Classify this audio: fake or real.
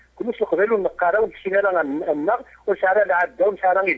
real